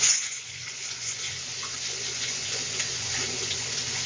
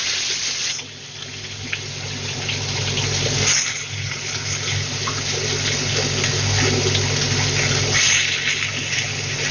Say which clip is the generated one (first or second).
first